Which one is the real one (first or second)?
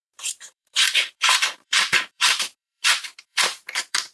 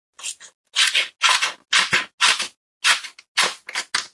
second